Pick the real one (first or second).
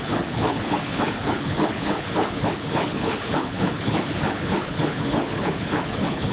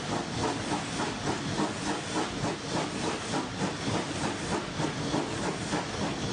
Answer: second